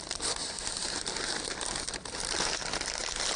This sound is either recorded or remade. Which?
recorded